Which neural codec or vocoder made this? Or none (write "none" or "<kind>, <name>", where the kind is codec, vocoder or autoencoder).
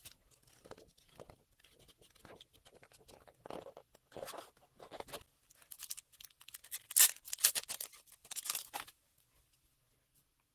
none